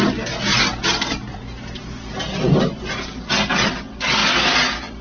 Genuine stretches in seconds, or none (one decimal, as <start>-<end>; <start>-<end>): 0.0-0.5; 3.2-5.0

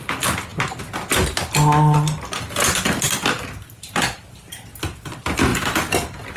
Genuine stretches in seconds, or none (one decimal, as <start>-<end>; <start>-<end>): 0.0-5.5

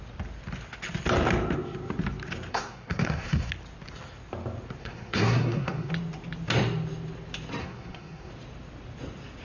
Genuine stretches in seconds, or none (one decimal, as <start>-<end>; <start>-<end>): 0.0-2.5; 3.5-4.8; 5.9-7.6; 8.3-9.4